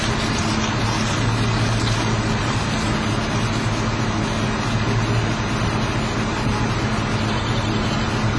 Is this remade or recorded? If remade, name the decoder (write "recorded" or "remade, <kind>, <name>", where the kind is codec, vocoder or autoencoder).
recorded